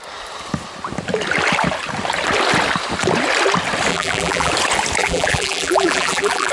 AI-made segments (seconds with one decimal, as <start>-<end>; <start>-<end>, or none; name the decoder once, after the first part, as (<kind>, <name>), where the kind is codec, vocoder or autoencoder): 3.9-4.5 (vocoder, BigVGAN v2); 5.0-6.5